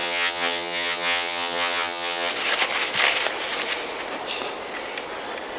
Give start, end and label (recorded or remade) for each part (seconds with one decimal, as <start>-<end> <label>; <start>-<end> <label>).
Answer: 0.0-2.3 remade; 2.3-5.6 recorded

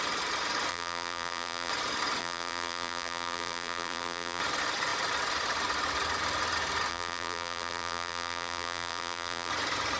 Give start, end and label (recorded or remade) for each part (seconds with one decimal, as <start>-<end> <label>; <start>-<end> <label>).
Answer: 0.0-0.7 recorded; 0.7-1.7 remade; 1.7-2.2 recorded; 2.2-4.4 remade; 4.4-6.9 recorded; 6.9-9.5 remade; 9.5-10.0 recorded

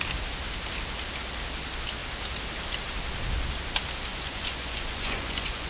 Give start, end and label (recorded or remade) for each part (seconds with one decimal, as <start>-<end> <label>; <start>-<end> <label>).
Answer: 0.0-4.1 recorded; 4.1-5.7 remade

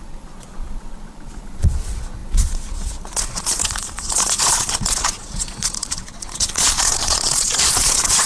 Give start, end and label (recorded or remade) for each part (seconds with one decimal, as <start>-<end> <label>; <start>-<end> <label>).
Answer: 0.0-8.3 remade

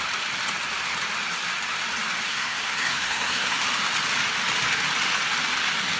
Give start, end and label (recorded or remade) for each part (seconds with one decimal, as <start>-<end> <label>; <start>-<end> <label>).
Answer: 0.0-2.3 recorded; 2.3-3.5 remade; 3.5-6.0 recorded

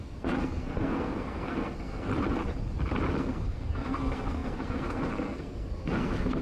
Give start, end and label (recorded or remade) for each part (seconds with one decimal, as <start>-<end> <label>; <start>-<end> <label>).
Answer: 0.0-2.1 remade; 2.1-3.1 recorded; 3.1-6.4 remade

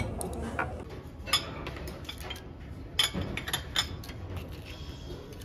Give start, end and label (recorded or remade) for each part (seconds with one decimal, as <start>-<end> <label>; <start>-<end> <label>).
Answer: 0.0-5.4 recorded